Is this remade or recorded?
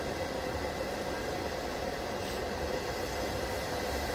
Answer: recorded